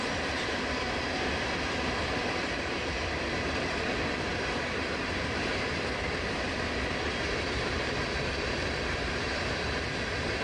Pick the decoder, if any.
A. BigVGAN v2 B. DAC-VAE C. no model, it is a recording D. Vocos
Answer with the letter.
A